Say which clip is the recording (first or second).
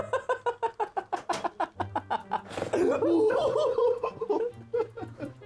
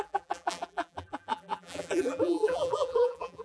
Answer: first